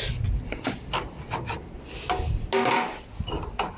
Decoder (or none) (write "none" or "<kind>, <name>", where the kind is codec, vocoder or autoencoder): none